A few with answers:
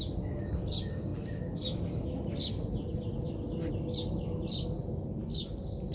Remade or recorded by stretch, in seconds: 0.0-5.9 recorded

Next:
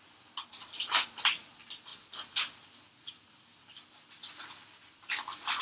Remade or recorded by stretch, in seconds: 0.0-5.6 recorded